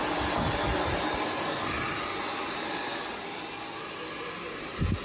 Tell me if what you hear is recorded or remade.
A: recorded